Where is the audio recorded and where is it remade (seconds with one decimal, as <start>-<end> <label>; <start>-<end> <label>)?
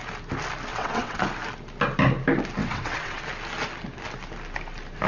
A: 0.0-0.7 recorded; 0.7-1.2 remade; 1.2-2.6 recorded; 2.6-3.2 remade; 3.2-5.1 recorded